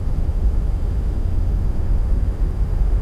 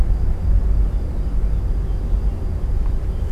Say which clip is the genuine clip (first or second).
second